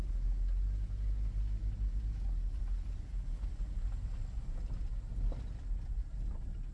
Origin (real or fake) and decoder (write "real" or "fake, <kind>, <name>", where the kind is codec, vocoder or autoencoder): real